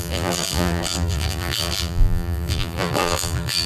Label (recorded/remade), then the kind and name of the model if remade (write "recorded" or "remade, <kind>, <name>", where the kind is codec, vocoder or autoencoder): remade, vocoder, BigVGAN v2